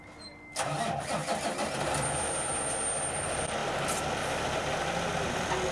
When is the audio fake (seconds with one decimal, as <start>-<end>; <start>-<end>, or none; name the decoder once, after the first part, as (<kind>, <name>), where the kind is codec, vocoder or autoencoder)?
none